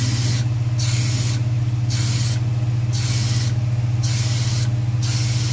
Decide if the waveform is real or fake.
real